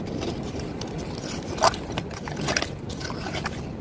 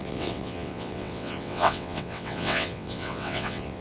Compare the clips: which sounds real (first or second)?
first